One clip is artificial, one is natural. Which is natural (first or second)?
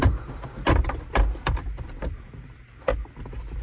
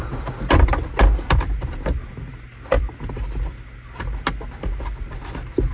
second